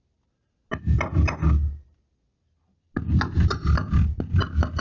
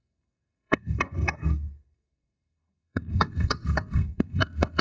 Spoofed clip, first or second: second